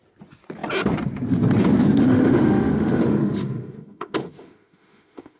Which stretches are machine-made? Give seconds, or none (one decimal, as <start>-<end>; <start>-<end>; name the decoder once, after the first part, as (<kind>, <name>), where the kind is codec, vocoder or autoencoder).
2.0-5.4 (autoencoder, DAC-VAE)